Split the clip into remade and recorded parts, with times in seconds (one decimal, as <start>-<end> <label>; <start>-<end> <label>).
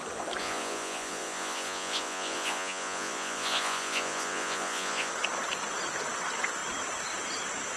0.0-0.4 recorded; 0.4-5.1 remade; 5.1-7.8 recorded